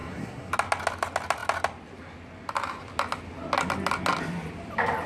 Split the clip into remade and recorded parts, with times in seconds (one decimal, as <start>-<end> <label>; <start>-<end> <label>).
0.0-0.5 remade; 0.5-5.1 recorded